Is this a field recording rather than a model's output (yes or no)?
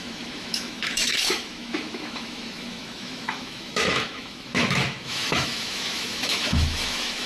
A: no